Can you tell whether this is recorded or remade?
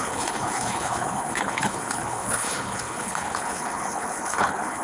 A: remade